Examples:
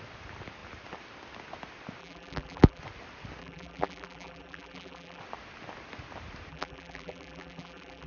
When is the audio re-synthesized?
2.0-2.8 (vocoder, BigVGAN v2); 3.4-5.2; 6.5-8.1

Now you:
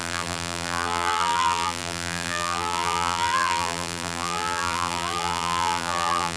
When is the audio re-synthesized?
0.0-6.4 (vocoder, BigVGAN v2)

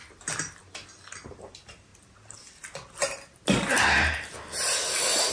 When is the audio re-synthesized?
none